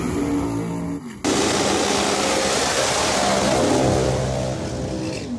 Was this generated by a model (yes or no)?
no